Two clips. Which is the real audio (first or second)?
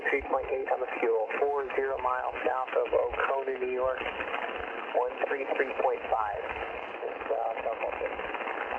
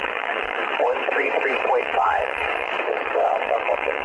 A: first